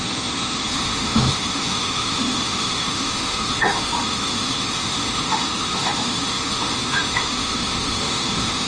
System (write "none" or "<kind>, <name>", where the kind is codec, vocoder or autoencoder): autoencoder, DAC-VAE